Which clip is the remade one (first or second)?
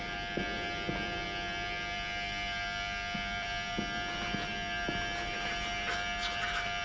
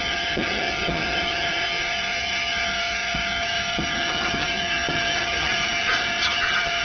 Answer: second